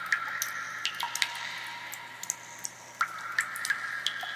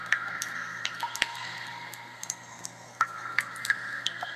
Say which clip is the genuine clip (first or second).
first